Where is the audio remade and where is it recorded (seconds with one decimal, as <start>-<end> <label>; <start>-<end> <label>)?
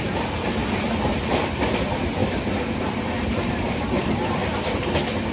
0.0-0.6 remade; 0.6-1.6 recorded; 1.6-2.2 remade; 2.2-3.3 recorded; 3.3-4.4 remade; 4.4-5.3 recorded